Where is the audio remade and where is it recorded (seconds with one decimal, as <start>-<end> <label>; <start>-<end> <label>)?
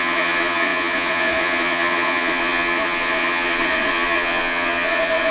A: 0.0-5.3 remade